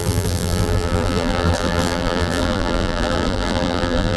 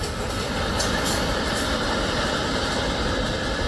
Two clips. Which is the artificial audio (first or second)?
first